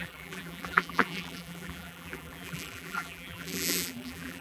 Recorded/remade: remade